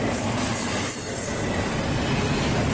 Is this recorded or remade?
recorded